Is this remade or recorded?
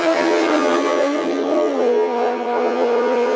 remade